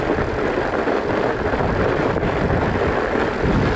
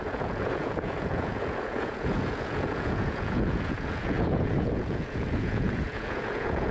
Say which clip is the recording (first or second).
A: first